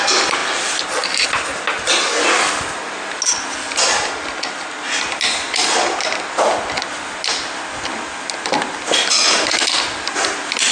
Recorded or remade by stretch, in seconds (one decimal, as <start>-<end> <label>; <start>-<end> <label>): 0.0-10.7 recorded